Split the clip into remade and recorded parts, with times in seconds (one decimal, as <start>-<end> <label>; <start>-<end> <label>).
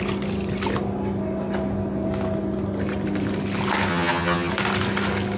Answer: 0.0-3.9 recorded; 3.9-4.5 remade; 4.5-5.4 recorded